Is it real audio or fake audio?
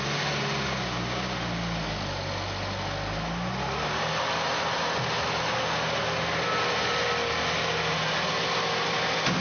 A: real